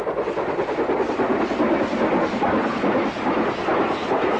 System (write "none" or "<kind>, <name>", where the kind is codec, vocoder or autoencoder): none